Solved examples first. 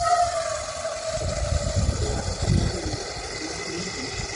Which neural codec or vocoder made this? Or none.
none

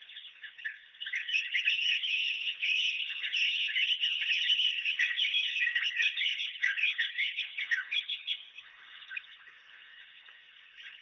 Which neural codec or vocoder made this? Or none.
codec, HILCodec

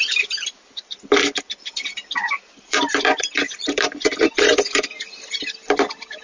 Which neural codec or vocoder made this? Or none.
vocoder, BigVGAN v2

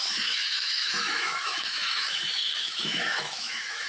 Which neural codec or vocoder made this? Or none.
autoencoder, DAC-VAE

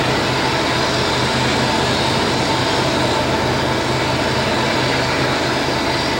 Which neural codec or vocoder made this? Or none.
none